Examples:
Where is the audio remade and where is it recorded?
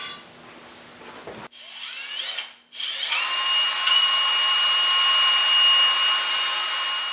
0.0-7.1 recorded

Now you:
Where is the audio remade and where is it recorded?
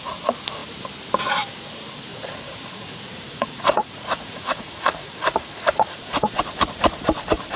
0.0-2.1 recorded; 2.1-6.4 remade; 6.4-7.6 recorded